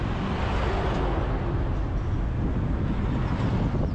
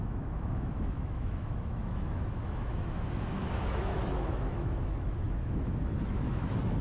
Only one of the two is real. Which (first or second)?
first